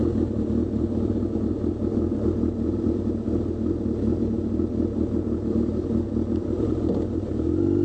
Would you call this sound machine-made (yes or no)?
no